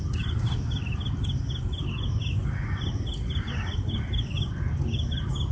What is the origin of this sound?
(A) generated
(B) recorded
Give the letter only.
B